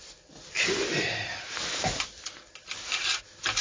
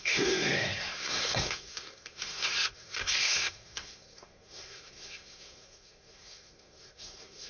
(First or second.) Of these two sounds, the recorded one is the first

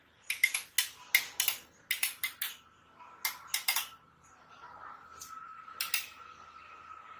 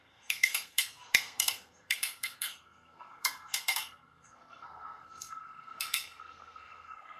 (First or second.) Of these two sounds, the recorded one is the first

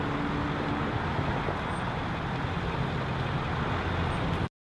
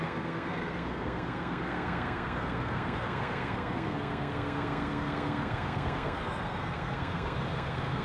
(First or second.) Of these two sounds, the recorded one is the first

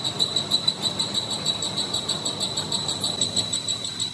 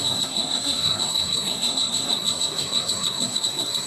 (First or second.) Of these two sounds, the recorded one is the first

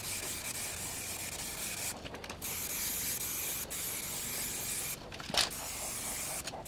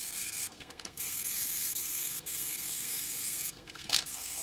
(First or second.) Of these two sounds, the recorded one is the first